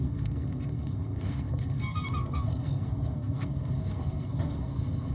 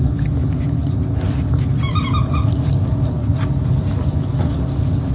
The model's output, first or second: first